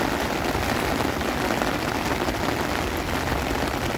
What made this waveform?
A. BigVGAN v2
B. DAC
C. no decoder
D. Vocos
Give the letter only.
C